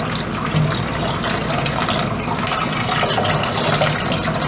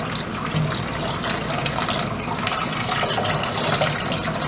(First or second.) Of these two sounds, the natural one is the first